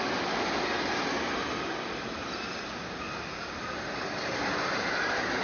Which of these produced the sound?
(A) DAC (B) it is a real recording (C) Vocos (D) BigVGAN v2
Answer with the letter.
B